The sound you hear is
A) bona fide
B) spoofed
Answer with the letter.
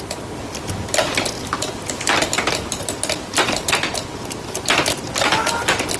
A